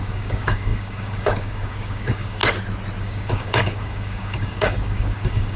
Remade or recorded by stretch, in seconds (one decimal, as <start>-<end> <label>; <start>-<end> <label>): 0.0-2.4 remade; 2.4-3.0 recorded; 3.0-5.6 remade